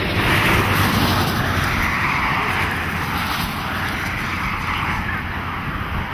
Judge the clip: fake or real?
real